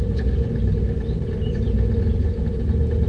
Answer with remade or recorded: recorded